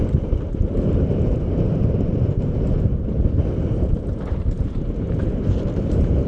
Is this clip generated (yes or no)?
yes